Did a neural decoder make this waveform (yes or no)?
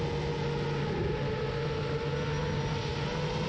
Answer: no